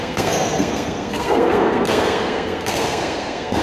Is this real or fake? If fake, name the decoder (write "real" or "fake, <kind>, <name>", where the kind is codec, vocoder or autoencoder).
fake, codec, SNAC